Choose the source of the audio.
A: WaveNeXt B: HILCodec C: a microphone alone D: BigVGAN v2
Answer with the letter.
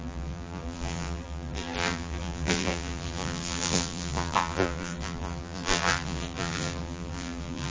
D